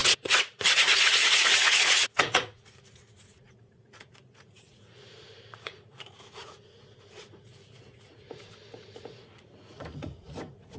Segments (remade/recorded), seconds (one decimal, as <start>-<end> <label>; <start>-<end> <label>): 0.0-10.8 remade